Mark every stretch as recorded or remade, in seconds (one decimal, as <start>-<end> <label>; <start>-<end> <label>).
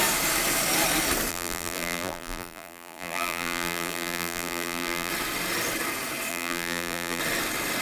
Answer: 0.0-1.3 recorded; 1.3-5.1 remade; 5.1-6.3 recorded; 6.3-7.2 remade; 7.2-7.8 recorded